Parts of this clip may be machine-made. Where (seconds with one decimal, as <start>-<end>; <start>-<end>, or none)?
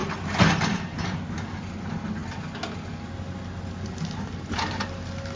none